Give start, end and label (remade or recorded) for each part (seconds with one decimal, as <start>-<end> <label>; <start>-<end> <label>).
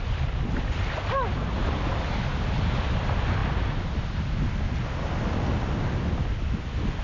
0.0-7.0 recorded